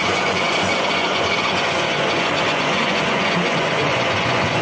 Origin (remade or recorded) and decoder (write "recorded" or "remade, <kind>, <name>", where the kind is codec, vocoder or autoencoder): remade, vocoder, Vocos